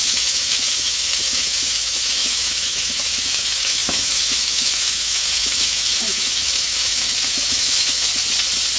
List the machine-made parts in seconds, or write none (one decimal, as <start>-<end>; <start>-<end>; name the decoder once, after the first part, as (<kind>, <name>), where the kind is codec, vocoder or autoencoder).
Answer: 0.0-8.1 (autoencoder, DAC-VAE)